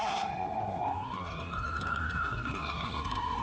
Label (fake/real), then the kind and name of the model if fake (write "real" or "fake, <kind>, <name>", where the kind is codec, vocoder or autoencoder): fake, codec, SNAC